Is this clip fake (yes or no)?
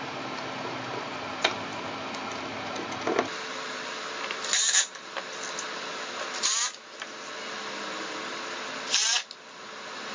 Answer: no